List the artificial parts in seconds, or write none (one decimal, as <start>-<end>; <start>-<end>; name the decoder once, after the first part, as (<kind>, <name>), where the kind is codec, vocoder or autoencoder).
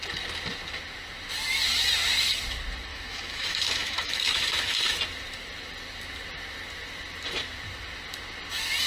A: 2.9-5.0 (autoencoder, DAC-VAE)